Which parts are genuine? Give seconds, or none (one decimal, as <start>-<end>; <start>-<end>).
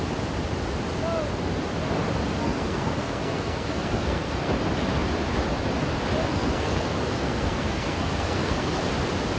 0.0-2.4; 4.5-6.3; 8.8-9.4